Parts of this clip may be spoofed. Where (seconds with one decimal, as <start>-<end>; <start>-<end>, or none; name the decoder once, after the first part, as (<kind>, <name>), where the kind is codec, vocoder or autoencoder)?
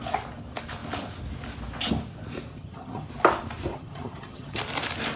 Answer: 2.5-3.1 (vocoder, HiFi-GAN); 3.7-4.6